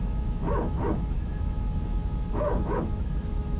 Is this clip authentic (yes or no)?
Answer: no